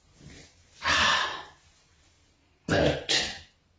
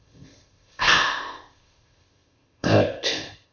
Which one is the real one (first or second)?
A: first